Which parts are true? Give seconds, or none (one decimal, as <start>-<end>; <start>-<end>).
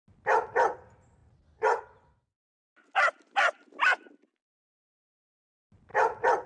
0.0-6.5